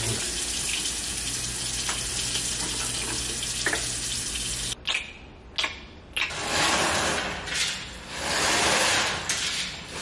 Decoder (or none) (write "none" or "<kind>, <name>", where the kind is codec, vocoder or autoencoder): none